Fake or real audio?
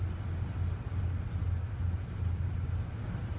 fake